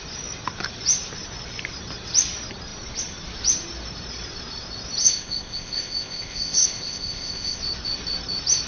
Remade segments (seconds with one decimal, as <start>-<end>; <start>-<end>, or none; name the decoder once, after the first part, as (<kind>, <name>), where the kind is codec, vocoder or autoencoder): 5.0-7.6 (codec, ZipCodec)